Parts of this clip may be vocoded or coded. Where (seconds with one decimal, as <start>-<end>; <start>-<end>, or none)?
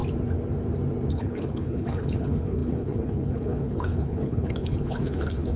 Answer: 1.1-5.6